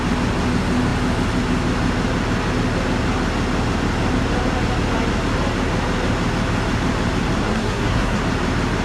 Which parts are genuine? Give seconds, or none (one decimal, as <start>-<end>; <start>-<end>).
0.0-7.4; 8.2-8.8